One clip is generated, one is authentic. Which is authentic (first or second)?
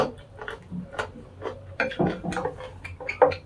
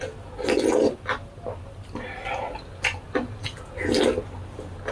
second